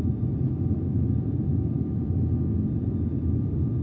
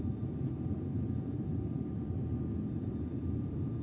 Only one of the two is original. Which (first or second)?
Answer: first